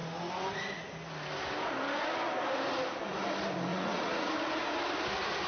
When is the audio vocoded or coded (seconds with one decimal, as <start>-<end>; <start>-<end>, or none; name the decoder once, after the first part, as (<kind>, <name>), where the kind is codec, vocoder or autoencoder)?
3.7-4.3 (vocoder, Vocos)